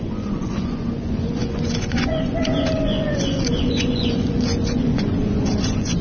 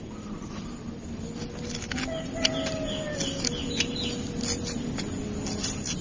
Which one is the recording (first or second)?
second